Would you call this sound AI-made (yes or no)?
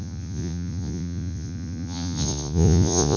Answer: yes